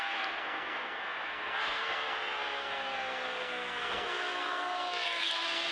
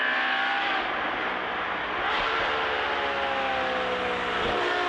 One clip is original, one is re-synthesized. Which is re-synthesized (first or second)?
first